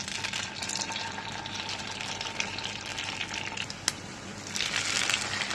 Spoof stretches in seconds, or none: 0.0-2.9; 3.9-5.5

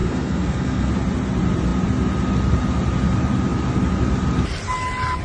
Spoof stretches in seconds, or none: 0.0-0.9

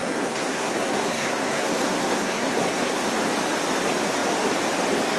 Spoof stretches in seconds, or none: 0.0-3.1

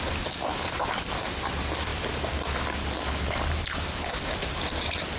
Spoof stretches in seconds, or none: none

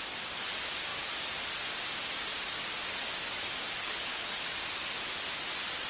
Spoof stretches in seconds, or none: 3.8-4.4

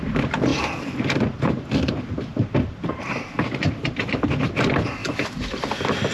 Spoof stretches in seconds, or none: 0.5-3.6; 5.0-6.1